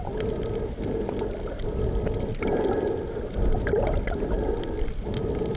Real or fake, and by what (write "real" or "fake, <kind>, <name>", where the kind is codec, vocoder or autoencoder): real